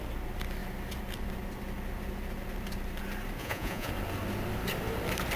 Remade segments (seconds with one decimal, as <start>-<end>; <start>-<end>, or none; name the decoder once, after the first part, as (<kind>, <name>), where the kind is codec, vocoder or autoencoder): 3.4-3.9 (vocoder, Vocos)